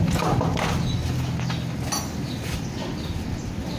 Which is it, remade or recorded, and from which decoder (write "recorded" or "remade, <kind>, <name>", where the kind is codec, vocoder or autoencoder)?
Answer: recorded